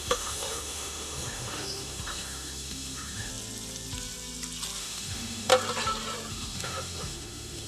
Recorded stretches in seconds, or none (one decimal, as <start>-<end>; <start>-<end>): 3.3-4.8; 5.5-6.3